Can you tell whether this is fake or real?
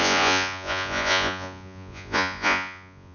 fake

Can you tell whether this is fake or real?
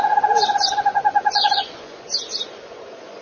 fake